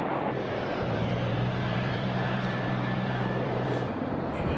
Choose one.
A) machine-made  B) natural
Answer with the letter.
A